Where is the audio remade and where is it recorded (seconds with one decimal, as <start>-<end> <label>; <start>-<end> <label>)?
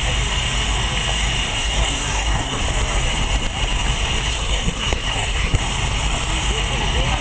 0.0-1.5 recorded; 1.5-2.6 remade; 2.6-4.3 recorded; 4.3-5.6 remade; 5.6-7.2 recorded